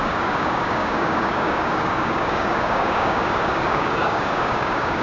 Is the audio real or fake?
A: fake